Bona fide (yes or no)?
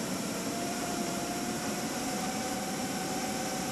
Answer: no